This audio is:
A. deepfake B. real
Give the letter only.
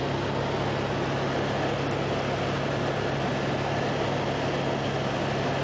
B